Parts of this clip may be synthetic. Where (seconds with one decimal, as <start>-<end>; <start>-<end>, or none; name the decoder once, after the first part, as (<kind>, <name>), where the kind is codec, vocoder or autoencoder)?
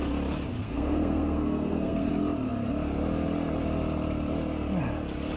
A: 0.6-2.1 (codec, SNAC)